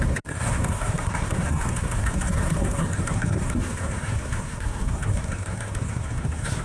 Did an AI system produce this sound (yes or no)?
yes